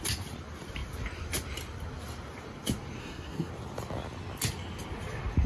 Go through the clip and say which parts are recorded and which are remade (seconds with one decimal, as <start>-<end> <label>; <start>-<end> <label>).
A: 0.0-3.0 recorded; 3.0-3.5 remade; 3.5-5.5 recorded